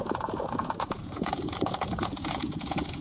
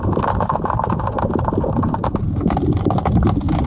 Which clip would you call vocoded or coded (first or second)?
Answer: first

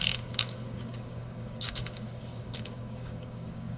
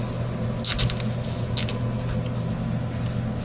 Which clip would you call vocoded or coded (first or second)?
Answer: first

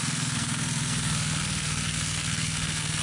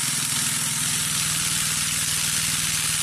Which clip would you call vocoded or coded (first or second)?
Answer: first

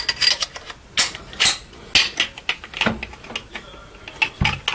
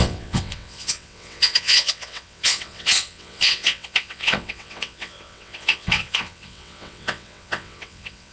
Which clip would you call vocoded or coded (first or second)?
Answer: second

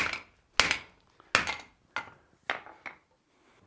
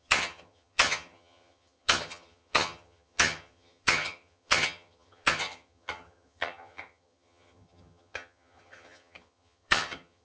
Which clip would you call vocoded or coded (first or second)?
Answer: second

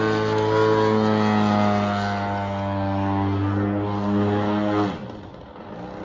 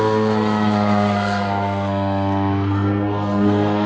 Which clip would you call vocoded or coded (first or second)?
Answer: second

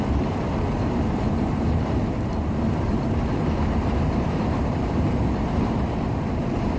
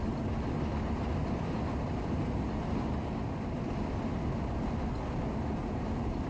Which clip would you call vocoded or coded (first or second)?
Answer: first